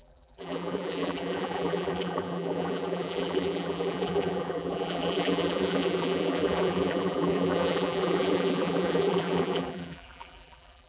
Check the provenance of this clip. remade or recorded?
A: remade